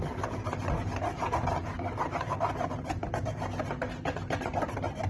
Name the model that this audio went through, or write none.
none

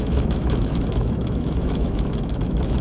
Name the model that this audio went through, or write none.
autoencoder, DAC-VAE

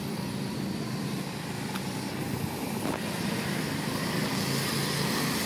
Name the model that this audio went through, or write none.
none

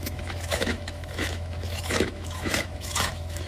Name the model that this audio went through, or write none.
autoencoder, DAC-VAE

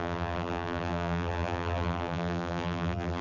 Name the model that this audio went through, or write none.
vocoder, BigVGAN v2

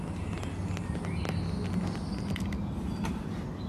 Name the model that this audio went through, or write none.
none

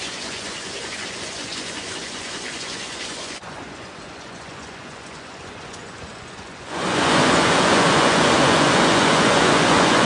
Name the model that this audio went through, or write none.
vocoder, Vocos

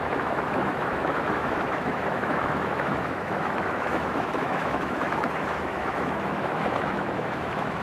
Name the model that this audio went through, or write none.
autoencoder, DAC-VAE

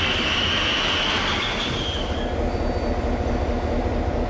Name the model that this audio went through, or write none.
none